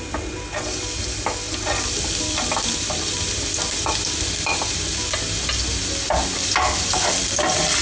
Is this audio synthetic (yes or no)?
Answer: no